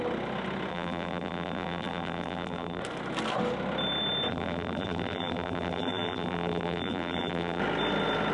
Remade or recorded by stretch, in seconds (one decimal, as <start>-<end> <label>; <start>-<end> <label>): 0.0-0.7 recorded; 0.7-2.8 remade; 2.8-4.3 recorded; 4.3-7.6 remade; 7.6-8.3 recorded